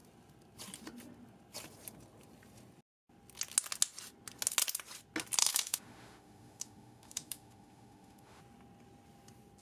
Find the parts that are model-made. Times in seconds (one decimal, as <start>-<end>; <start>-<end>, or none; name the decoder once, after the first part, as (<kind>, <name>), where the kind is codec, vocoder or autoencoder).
5.4-8.4 (autoencoder, DAC-VAE)